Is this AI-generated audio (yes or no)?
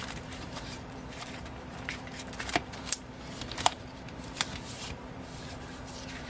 yes